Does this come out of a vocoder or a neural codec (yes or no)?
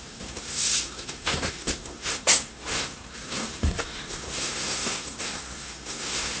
yes